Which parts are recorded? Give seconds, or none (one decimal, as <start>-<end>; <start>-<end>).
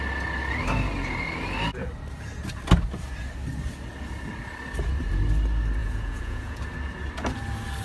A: 0.0-5.8; 6.6-7.8